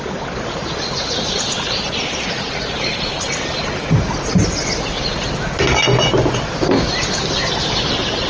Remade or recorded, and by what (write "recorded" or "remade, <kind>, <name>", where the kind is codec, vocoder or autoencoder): recorded